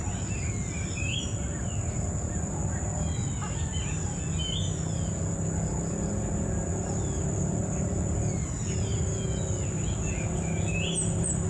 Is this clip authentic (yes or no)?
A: yes